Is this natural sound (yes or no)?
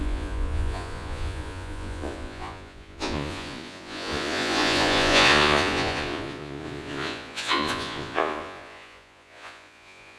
no